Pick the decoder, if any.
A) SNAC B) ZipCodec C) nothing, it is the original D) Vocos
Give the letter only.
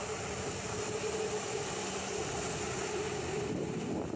C